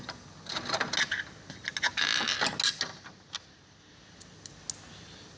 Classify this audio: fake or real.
real